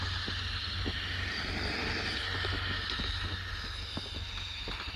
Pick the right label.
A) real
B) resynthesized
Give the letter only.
A